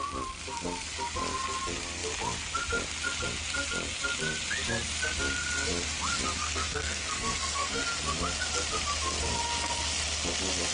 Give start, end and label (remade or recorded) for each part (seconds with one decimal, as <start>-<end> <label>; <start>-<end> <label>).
0.0-6.4 recorded; 6.4-7.8 remade; 7.8-10.7 recorded